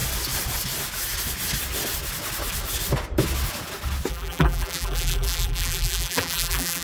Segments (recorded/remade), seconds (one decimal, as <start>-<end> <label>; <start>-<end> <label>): 0.0-4.1 recorded; 4.1-6.8 remade